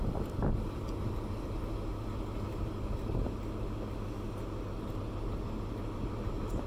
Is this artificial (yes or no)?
no